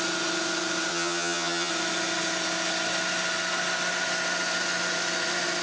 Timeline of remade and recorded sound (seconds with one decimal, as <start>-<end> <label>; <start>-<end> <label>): 0.0-0.9 recorded; 0.9-1.7 remade; 1.7-5.6 recorded